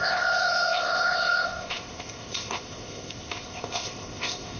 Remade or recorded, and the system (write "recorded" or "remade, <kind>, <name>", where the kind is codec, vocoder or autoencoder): remade, codec, ZipCodec